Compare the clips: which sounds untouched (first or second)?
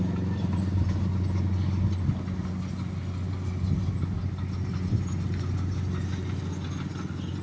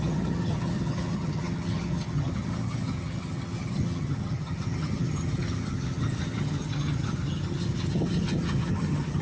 first